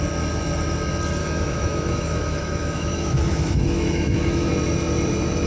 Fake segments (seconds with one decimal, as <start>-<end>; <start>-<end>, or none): 1.2-4.5